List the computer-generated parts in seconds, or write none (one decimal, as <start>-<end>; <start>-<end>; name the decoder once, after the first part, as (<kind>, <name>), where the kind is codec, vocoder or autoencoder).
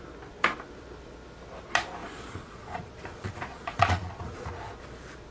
2.0-4.5 (vocoder, Vocos)